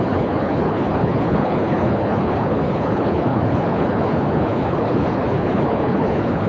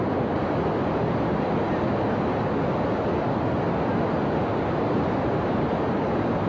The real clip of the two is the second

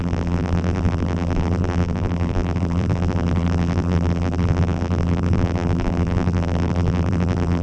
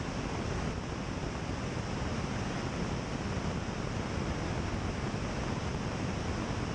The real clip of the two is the second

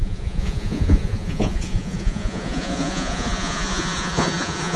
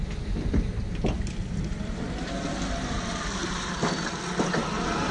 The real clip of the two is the second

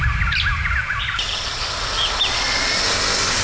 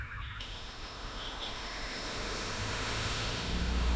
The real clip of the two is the first